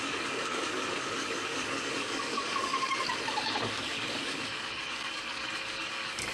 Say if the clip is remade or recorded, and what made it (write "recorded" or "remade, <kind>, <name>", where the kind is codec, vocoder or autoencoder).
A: remade, codec, DAC